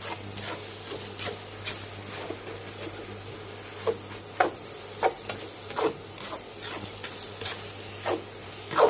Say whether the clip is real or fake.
real